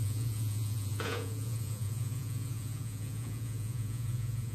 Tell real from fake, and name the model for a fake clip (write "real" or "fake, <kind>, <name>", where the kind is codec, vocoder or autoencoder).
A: fake, vocoder, Vocos